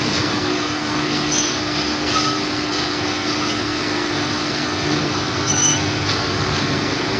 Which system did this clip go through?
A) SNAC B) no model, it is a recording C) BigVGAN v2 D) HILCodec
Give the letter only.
A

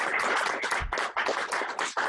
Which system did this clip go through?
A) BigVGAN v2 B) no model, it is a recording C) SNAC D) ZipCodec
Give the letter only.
B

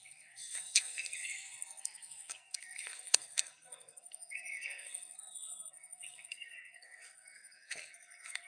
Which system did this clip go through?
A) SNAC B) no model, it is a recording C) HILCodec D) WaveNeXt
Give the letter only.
A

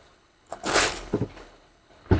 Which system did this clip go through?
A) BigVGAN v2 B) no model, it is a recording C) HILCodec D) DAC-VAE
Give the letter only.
C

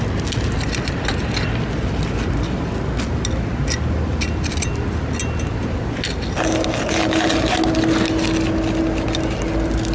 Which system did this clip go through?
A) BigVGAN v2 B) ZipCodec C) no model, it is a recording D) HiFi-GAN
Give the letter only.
C